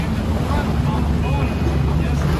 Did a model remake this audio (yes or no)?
no